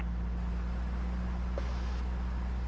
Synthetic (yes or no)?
no